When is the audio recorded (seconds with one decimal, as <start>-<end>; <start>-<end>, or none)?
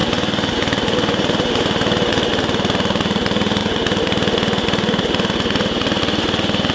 0.0-0.5; 3.6-6.0